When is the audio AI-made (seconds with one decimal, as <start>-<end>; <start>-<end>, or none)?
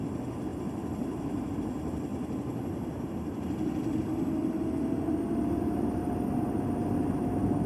0.5-1.5; 2.1-3.5